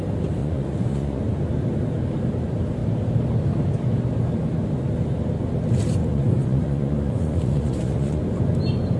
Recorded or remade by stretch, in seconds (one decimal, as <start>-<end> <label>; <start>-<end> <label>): 0.0-0.4 recorded; 0.4-1.2 remade; 1.2-6.0 recorded; 6.0-8.2 remade; 8.2-9.0 recorded